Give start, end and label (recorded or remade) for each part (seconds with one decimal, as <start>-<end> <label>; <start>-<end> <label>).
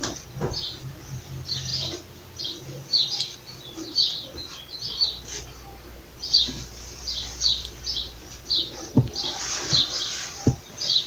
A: 0.0-8.9 recorded; 8.9-9.4 remade; 9.4-11.1 recorded